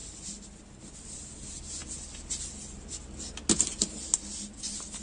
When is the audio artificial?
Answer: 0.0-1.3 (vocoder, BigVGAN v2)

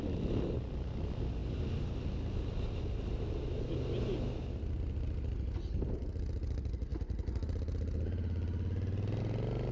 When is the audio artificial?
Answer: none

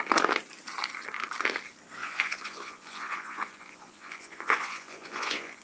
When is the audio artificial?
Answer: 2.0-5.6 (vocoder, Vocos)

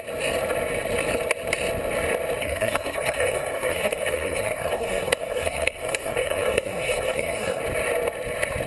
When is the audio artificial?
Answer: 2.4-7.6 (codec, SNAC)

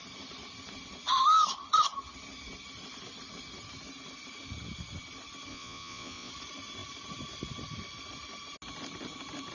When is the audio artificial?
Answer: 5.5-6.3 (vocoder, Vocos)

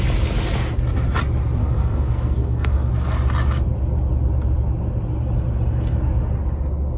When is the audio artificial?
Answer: 1.6-2.9 (codec, SNAC)

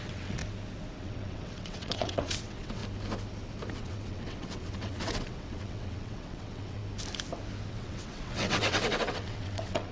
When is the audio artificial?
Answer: 0.0-0.4 (vocoder, WaveNeXt); 1.0-2.8; 3.7-6.8; 7.7-9.9

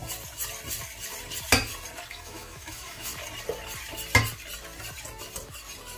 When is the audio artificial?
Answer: 2.1-3.1 (autoencoder, DAC-VAE)